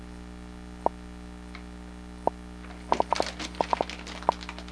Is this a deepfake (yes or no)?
no